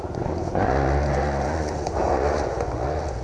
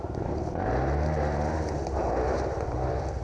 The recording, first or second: second